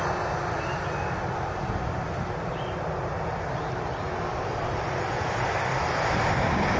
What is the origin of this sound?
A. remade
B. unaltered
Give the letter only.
B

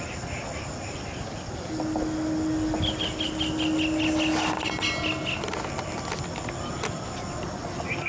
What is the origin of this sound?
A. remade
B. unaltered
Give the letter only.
B